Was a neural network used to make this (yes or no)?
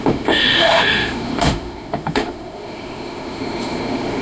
yes